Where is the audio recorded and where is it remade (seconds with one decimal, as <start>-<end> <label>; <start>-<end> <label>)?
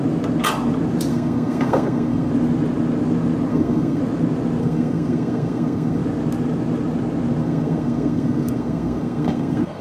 0.0-1.1 recorded; 1.1-2.3 remade; 2.3-3.5 recorded; 3.5-4.0 remade; 4.0-4.6 recorded; 4.6-6.0 remade; 6.0-7.4 recorded; 7.4-9.8 remade